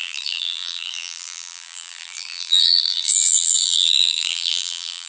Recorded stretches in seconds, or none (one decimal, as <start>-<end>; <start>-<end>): none